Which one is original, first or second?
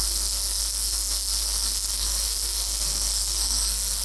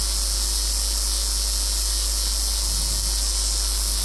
second